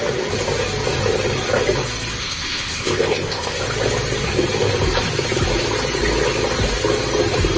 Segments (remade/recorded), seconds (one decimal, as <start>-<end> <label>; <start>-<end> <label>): 0.0-2.2 recorded; 2.2-3.6 remade; 3.6-7.6 recorded